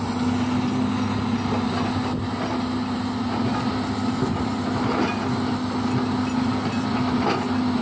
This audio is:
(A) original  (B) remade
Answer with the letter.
A